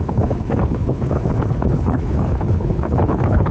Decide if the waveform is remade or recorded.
remade